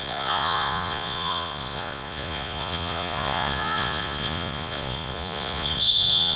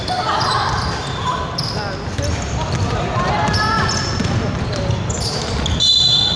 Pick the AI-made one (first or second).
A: first